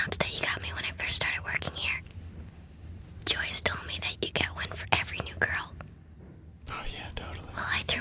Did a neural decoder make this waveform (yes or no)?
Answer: no